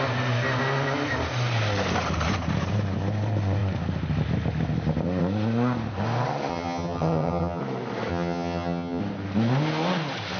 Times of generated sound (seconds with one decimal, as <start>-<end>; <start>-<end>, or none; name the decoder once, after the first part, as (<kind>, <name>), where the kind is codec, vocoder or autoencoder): 6.5-7.6 (vocoder, HiFi-GAN); 8.1-9.0